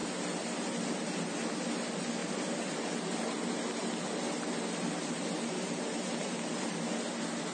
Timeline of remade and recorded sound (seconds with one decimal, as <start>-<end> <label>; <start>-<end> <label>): 0.0-7.5 recorded